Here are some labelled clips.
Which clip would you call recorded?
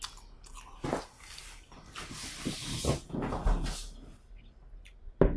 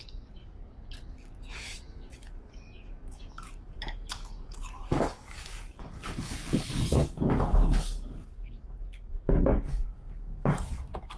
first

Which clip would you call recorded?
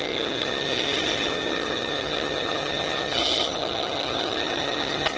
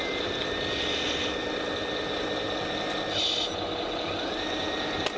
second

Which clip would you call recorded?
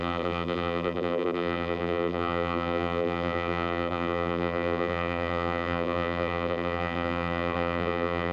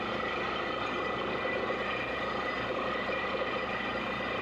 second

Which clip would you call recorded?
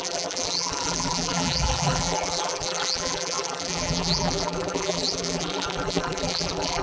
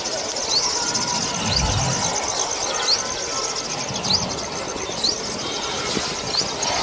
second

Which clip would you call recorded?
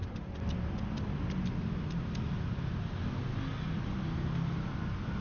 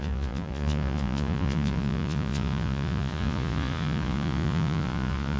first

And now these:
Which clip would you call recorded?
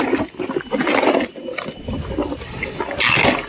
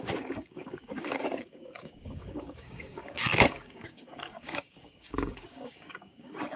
first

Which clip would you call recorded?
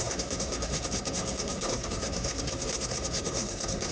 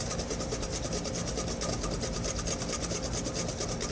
second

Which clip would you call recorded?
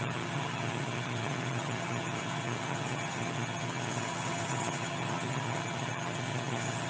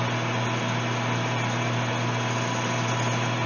second